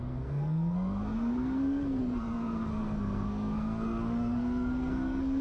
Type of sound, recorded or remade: remade